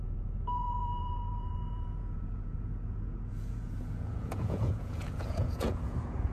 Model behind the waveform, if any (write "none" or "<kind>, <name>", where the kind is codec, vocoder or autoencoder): vocoder, Vocos